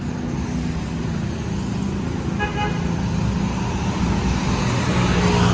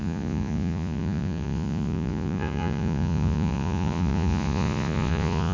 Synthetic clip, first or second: second